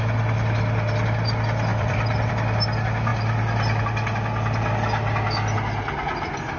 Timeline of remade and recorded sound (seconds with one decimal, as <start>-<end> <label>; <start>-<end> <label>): 0.0-1.7 recorded; 1.7-2.3 remade; 2.3-3.1 recorded; 3.1-3.8 remade; 3.8-6.6 recorded